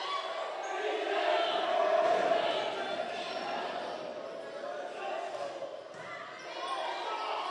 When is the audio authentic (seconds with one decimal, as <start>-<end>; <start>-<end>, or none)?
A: 0.0-7.5